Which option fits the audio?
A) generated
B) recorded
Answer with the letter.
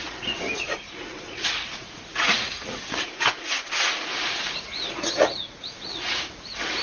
A